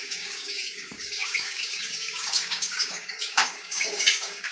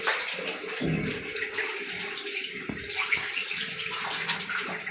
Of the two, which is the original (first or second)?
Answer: second